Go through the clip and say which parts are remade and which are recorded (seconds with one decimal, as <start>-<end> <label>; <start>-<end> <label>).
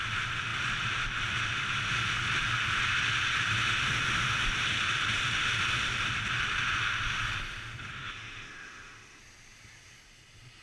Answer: 0.0-8.0 recorded; 8.0-9.2 remade; 9.2-10.6 recorded